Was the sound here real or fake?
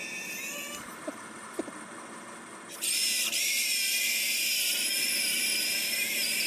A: fake